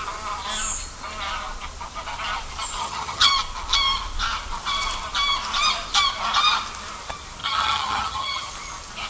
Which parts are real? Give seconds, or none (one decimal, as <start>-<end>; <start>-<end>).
0.0-2.8; 3.3-7.4; 8.5-9.1